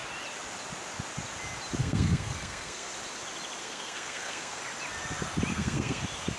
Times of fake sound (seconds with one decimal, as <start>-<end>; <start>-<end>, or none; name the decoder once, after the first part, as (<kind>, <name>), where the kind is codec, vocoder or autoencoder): 1.8-2.9 (codec, SNAC); 3.6-4.6; 5.5-6.0